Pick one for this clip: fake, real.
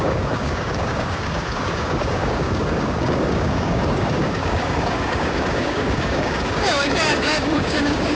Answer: fake